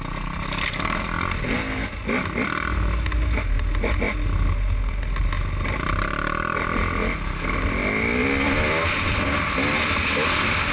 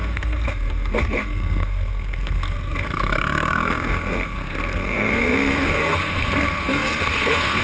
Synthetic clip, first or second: second